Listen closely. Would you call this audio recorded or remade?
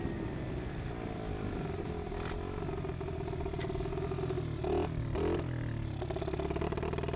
recorded